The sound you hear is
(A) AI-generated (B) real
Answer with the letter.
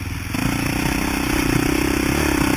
B